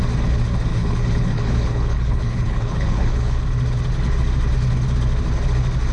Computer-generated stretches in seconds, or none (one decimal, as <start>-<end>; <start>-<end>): 0.7-3.4